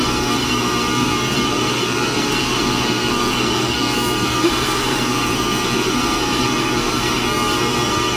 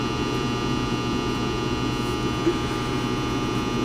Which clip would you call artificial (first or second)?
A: first